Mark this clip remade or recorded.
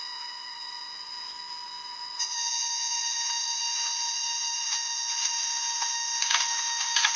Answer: recorded